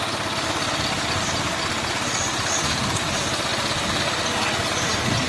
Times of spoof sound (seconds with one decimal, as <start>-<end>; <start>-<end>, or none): none